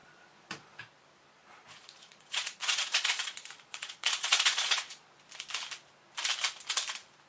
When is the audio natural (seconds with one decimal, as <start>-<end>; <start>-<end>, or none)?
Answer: 0.8-1.4; 5.1-7.3

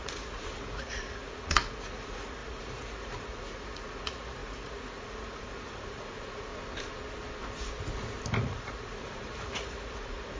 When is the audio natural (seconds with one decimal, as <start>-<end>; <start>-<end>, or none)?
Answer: 6.5-8.4

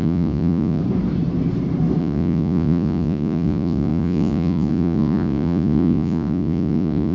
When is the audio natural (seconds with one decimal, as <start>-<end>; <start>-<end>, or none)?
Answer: 0.8-2.0

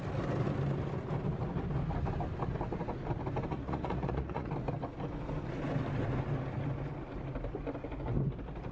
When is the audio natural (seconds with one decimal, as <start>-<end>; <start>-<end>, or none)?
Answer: 0.0-3.5; 4.5-8.7

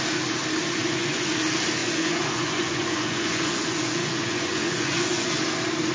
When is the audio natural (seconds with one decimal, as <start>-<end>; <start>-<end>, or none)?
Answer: 0.0-0.8; 1.3-1.8; 5.3-5.9

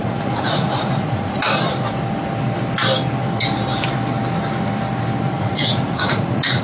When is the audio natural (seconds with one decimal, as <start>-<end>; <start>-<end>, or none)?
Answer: 1.4-5.2

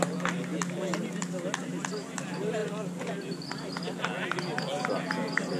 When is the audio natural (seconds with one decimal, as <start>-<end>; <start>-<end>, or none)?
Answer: 0.0-5.6

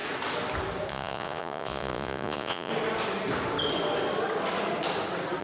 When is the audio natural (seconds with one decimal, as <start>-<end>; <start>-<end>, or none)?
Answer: 0.0-0.9; 2.7-5.4